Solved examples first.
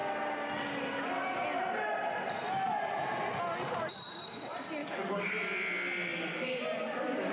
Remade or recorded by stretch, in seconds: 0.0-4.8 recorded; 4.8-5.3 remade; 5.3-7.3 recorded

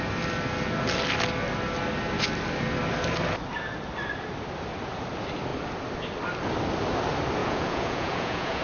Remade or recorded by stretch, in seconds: 0.0-7.4 recorded; 7.4-8.6 remade

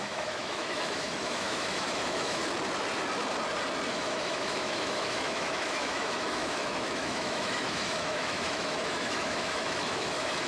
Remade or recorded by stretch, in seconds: 0.0-2.4 remade; 2.4-3.9 recorded; 3.9-10.5 remade

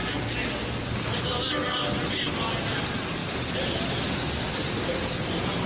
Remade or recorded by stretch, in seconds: 0.0-5.7 recorded

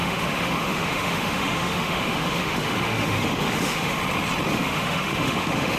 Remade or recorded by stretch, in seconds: 0.0-4.0 remade; 4.0-4.5 recorded; 4.5-5.8 remade